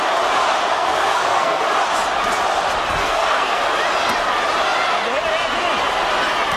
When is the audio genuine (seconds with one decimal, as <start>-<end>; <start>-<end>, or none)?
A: 0.0-0.7; 1.6-3.0; 3.6-6.6

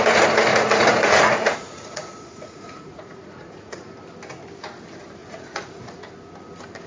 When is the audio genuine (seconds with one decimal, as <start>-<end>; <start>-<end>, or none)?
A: 0.0-0.5; 3.9-5.2; 6.1-6.9